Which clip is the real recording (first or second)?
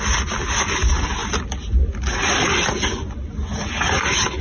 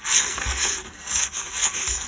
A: first